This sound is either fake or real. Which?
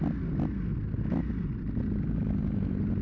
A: real